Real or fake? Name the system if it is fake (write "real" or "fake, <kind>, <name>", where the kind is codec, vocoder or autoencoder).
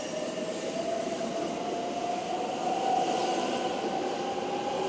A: real